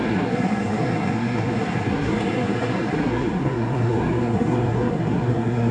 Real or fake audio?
fake